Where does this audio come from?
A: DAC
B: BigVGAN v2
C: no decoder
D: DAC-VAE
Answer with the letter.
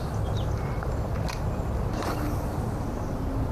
C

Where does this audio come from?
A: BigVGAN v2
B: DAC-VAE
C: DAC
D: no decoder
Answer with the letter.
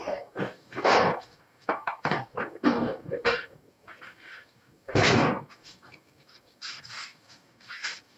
C